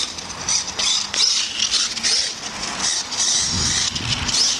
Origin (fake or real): real